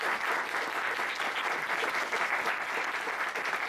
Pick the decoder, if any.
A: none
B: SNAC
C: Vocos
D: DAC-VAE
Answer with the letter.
A